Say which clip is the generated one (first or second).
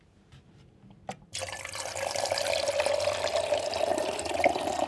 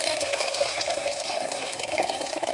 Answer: second